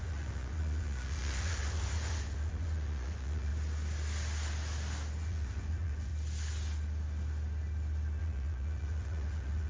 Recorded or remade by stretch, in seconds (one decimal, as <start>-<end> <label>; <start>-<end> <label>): 0.0-3.5 remade; 3.5-5.2 recorded; 5.2-6.1 remade; 6.1-8.2 recorded; 8.2-9.7 remade